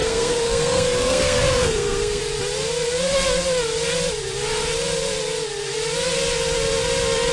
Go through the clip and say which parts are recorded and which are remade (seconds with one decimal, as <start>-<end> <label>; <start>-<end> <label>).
0.0-2.2 remade; 2.2-7.3 recorded